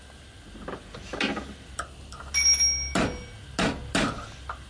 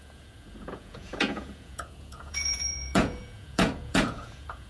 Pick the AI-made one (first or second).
second